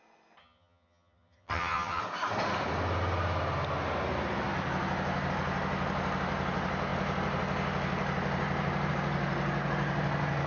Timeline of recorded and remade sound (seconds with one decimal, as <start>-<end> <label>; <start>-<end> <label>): 0.0-0.4 recorded; 0.4-2.0 remade; 2.0-10.5 recorded